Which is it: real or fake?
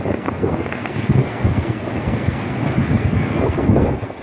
fake